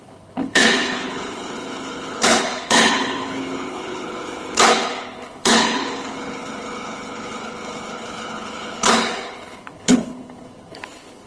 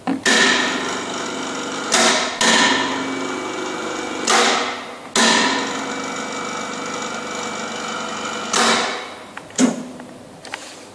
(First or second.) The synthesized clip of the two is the first